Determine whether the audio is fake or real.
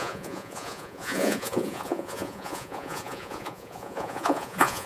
fake